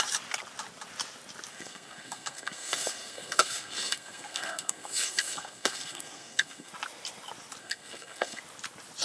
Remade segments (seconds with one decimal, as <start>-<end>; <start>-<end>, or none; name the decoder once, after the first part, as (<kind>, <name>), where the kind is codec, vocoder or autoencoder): 1.5-6.7 (codec, SNAC); 7.6-8.4